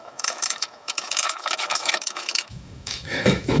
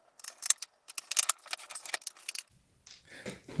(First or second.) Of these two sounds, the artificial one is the first